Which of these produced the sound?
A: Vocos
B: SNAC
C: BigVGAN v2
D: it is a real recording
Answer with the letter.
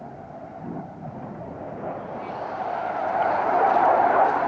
D